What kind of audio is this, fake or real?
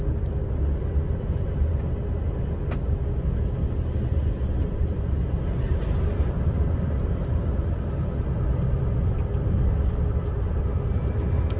real